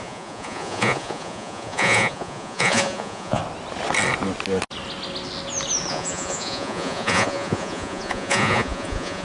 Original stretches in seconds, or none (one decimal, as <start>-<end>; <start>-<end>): 3.4-5.9